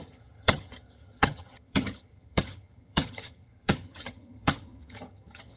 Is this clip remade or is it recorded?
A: remade